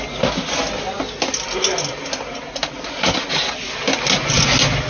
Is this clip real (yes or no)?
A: yes